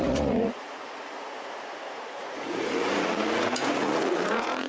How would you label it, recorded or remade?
remade